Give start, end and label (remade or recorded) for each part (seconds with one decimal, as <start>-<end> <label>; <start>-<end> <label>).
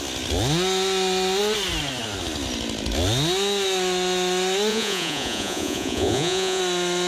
0.0-4.7 recorded; 4.7-6.6 remade; 6.6-7.1 recorded